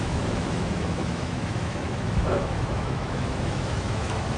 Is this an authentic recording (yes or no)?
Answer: no